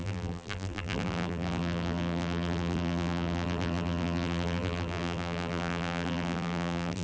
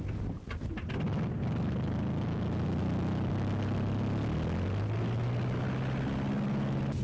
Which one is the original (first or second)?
second